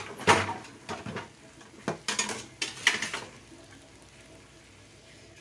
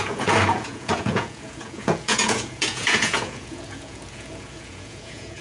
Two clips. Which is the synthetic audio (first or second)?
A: second